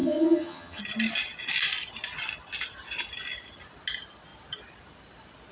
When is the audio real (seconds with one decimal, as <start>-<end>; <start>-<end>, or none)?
0.8-5.5